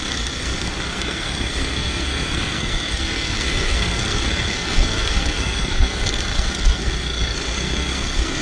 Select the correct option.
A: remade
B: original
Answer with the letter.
A